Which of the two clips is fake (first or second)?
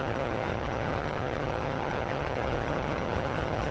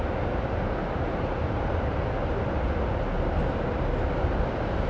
first